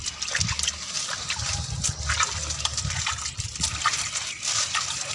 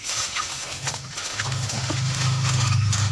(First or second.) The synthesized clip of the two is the second